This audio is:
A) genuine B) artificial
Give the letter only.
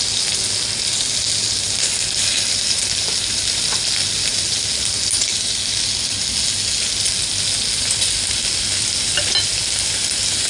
A